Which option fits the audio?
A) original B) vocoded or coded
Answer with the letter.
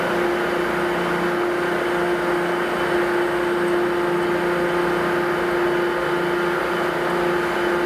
A